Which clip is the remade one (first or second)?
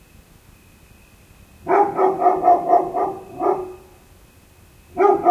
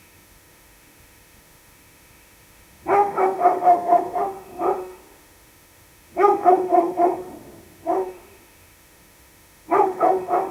second